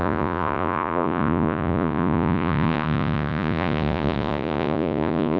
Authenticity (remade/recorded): remade